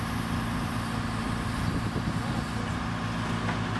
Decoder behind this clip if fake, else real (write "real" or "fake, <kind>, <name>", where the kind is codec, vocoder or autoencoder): real